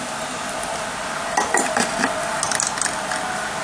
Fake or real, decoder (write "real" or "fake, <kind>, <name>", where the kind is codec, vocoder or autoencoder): real